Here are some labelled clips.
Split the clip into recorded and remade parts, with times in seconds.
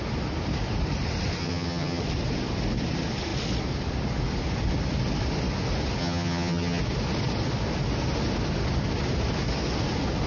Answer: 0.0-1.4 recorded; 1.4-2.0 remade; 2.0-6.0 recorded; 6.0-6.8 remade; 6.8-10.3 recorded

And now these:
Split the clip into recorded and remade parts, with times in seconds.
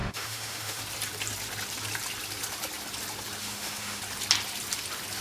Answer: 0.0-0.8 remade; 0.8-3.4 recorded; 3.4-4.0 remade; 4.0-5.2 recorded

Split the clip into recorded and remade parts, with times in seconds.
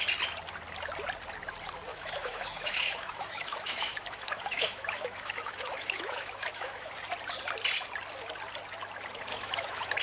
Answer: 0.0-1.9 recorded; 1.9-6.9 remade; 6.9-9.3 recorded; 9.3-10.0 remade